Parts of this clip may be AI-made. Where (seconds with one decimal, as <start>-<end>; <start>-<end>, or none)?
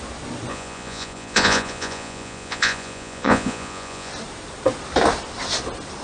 0.5-4.1